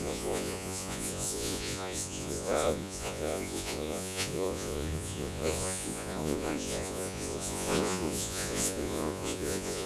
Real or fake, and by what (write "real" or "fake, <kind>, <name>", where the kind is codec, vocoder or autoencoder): fake, vocoder, Vocos